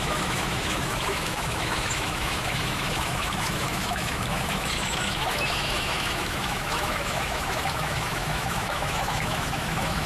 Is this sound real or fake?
fake